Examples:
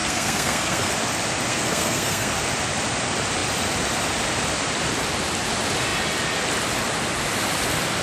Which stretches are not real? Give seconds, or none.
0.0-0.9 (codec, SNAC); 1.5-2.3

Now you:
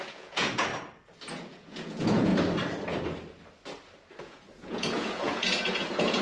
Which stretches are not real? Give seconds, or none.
0.0-0.7 (vocoder, Vocos); 1.3-2.3; 4.2-6.2

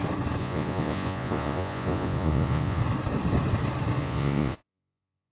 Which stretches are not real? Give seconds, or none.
0.4-2.8 (vocoder, Vocos); 4.0-5.3

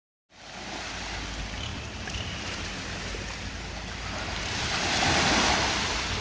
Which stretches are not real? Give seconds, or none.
none

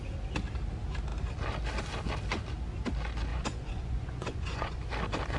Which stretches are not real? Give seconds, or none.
3.3-4.8 (vocoder, Vocos)